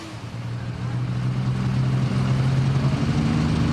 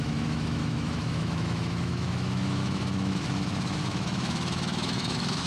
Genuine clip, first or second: first